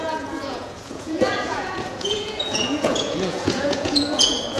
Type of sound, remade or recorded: remade